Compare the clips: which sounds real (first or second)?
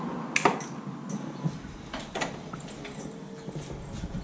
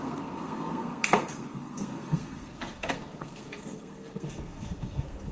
first